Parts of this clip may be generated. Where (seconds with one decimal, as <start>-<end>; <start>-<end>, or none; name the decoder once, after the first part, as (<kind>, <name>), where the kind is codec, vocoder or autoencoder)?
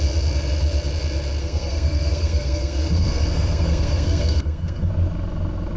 1.4-4.9 (codec, SNAC)